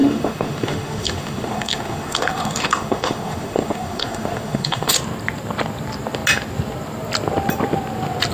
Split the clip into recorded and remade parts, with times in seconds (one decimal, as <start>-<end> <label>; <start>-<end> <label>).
0.0-4.9 remade; 4.9-8.3 recorded